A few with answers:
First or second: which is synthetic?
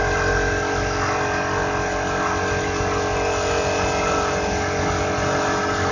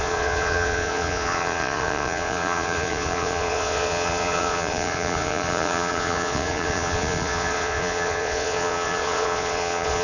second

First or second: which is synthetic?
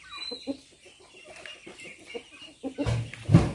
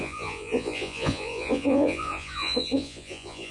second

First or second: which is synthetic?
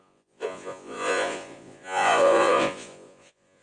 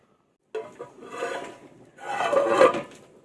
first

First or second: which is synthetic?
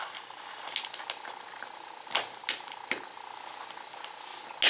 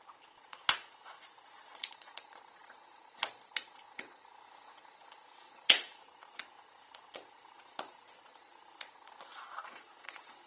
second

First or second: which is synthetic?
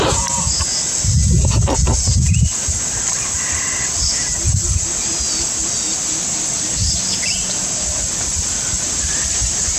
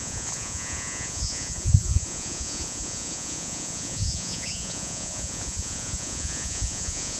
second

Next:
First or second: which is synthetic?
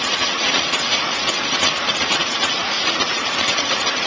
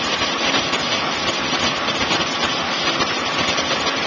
first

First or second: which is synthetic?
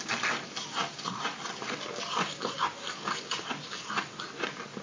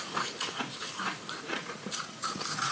second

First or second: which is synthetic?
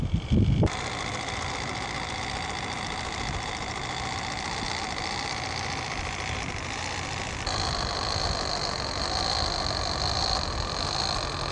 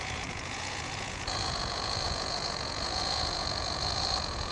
second